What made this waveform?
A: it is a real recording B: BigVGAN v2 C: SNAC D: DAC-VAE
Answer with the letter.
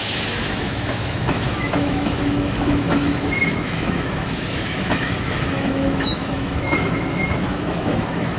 D